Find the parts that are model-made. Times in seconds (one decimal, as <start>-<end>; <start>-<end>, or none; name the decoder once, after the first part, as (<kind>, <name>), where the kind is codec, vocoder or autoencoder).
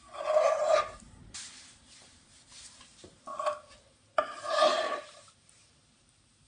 0.0-3.3 (vocoder, BigVGAN v2); 4.5-6.5